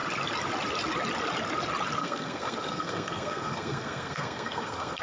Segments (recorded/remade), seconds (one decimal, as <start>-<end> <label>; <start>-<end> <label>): 0.0-2.0 recorded; 2.0-5.0 remade